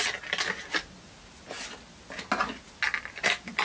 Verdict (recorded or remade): recorded